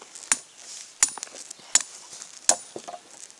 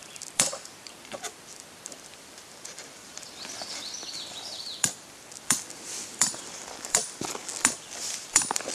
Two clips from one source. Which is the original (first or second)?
first